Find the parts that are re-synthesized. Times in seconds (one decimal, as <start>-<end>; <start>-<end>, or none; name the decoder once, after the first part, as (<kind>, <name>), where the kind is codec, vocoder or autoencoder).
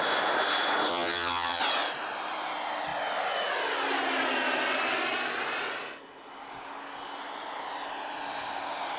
0.9-1.6 (vocoder, HiFi-GAN)